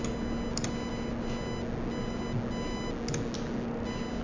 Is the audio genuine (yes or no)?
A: yes